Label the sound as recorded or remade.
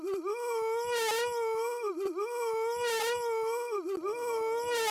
recorded